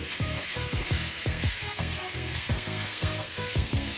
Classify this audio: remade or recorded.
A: remade